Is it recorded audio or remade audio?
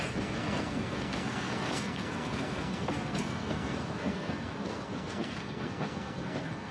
remade